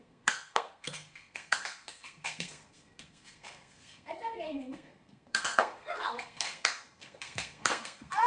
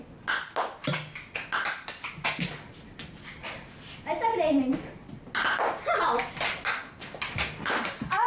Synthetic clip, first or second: first